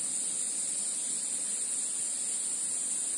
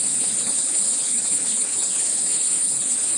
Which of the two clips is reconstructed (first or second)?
second